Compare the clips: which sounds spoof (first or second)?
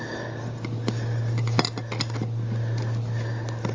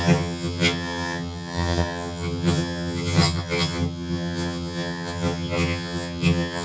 second